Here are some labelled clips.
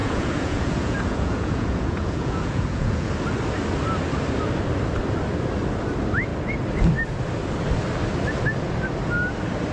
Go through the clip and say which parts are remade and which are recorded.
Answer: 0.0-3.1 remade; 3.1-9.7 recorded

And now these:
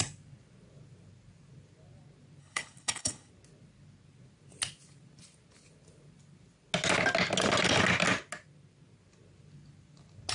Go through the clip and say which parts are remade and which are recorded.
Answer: 0.0-2.4 recorded; 2.4-3.3 remade; 3.3-10.3 recorded

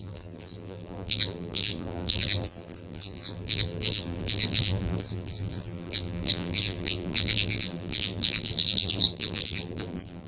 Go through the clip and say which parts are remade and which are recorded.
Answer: 0.0-10.3 remade

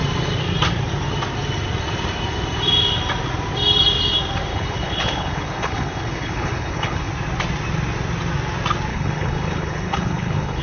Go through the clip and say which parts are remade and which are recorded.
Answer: 0.0-4.5 recorded; 4.5-7.1 remade; 7.1-8.9 recorded; 8.9-10.6 remade

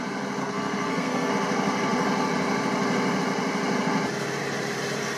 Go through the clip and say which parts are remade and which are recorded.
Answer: 0.0-0.4 recorded; 0.4-1.3 remade; 1.3-5.2 recorded

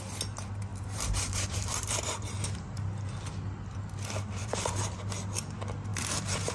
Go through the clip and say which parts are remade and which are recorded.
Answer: 0.0-0.7 recorded; 0.7-2.7 remade; 2.7-4.4 recorded; 4.4-5.0 remade; 5.0-5.9 recorded; 5.9-6.5 remade